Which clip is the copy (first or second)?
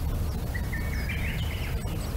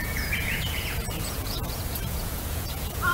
second